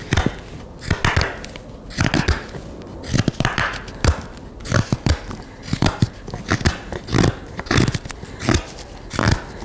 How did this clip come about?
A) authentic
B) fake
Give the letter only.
A